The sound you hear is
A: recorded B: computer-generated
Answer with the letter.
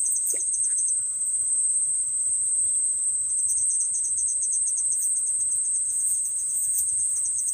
B